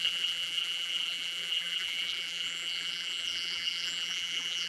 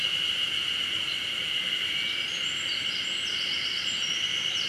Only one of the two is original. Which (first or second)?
second